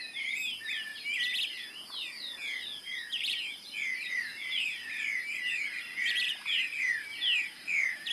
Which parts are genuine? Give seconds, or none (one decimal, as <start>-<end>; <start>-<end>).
0.9-2.8